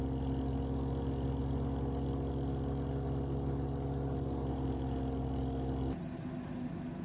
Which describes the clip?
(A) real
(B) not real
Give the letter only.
A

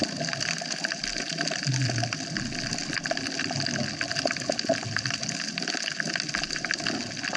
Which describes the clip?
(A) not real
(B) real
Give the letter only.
B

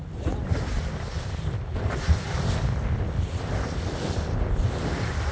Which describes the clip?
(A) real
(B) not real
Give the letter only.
A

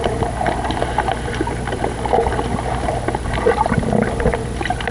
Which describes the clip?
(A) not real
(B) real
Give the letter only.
B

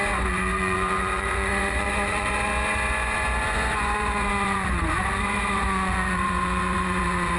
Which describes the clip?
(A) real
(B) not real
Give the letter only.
B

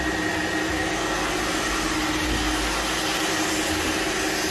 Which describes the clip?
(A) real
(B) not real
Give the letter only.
A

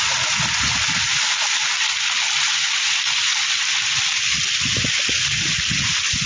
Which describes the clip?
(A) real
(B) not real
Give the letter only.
A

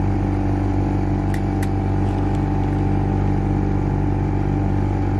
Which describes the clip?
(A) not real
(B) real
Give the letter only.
B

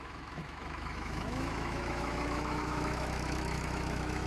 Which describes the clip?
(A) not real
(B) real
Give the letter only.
A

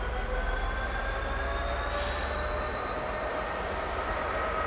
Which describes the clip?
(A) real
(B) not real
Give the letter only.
A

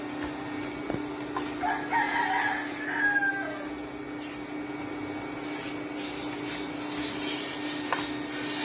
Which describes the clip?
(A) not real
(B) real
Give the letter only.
B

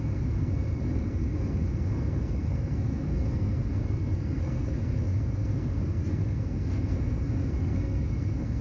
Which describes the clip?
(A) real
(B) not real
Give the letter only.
B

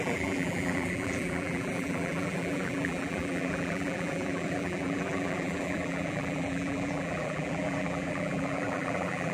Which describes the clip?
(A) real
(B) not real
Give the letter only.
B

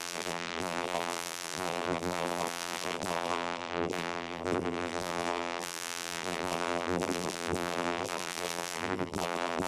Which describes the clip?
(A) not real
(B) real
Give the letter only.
A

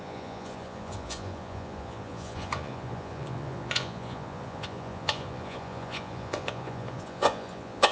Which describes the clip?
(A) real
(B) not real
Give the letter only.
B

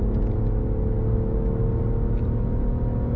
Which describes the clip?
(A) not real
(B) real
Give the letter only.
B